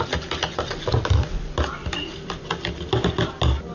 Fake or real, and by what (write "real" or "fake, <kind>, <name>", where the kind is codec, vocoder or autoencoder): real